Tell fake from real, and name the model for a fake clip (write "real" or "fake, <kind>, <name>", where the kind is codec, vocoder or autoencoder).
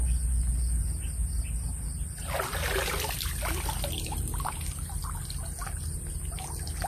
real